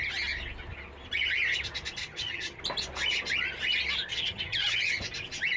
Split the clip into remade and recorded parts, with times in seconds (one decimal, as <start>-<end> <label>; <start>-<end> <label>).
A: 0.0-2.0 recorded; 2.0-2.6 remade; 2.6-4.1 recorded; 4.1-4.8 remade; 4.8-5.6 recorded